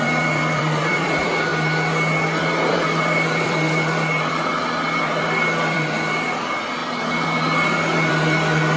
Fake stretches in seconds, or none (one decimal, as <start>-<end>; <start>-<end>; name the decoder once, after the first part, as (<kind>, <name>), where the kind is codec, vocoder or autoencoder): 0.0-1.5 (vocoder, BigVGAN v2); 2.4-4.5; 5.0-6.8; 8.1-8.8